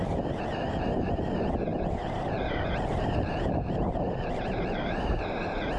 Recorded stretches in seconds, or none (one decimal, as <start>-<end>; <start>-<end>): 0.0-1.7; 5.2-5.8